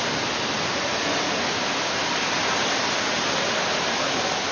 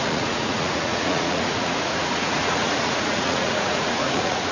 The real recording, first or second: first